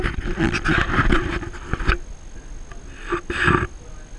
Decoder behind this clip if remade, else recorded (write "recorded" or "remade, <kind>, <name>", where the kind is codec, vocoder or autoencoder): recorded